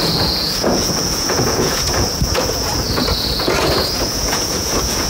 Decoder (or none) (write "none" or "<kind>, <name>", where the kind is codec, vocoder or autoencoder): vocoder, Vocos